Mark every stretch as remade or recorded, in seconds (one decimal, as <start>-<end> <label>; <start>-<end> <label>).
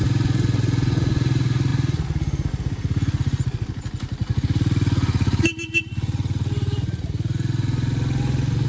0.0-8.7 recorded